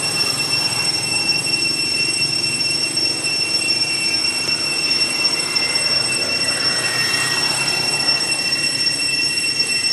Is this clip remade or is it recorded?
remade